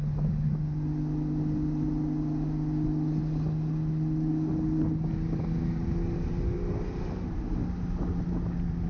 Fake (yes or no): no